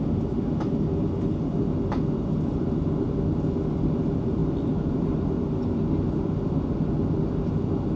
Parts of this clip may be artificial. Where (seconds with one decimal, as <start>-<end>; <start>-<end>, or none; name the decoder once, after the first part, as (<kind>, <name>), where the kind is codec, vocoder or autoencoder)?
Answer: none